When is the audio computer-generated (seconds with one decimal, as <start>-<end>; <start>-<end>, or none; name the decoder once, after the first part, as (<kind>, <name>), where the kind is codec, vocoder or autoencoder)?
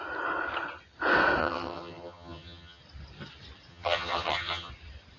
1.4-2.8 (vocoder, HiFi-GAN); 3.7-4.7